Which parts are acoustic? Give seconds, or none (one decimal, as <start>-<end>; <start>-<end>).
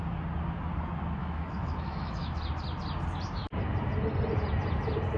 0.0-1.2; 2.3-5.2